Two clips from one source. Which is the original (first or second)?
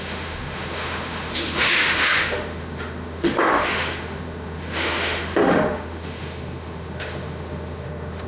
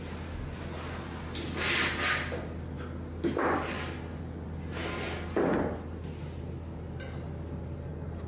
second